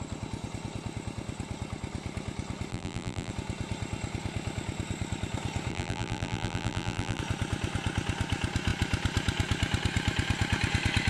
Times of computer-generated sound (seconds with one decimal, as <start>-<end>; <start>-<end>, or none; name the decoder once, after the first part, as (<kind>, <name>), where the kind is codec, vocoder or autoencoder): 2.7-3.3 (vocoder, BigVGAN v2); 5.7-7.2